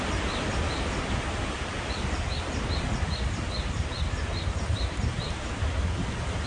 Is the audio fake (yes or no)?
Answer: no